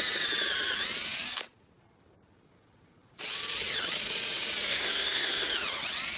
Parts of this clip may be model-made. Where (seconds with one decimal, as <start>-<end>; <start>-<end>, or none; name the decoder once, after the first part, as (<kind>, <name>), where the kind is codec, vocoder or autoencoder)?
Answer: 4.7-5.5 (codec, SNAC)